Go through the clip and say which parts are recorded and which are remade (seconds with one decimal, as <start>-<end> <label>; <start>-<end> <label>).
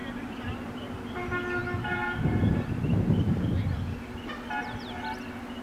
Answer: 0.0-1.1 remade; 1.1-5.6 recorded